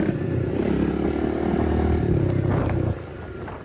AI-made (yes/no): no